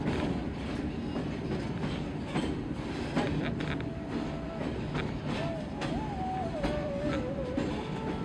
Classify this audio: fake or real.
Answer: real